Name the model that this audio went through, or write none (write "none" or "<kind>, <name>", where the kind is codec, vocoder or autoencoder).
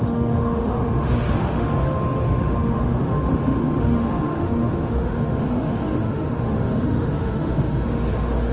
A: autoencoder, DAC-VAE